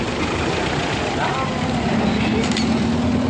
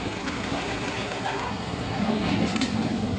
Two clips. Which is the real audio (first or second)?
first